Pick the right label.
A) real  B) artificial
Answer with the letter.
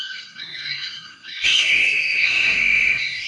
B